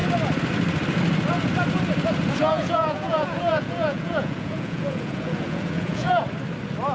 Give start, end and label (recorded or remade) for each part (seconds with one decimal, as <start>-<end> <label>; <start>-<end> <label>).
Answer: 0.0-2.4 recorded; 2.4-6.2 remade; 6.2-6.9 recorded